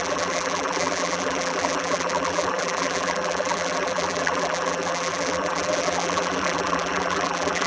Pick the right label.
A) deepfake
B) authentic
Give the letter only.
A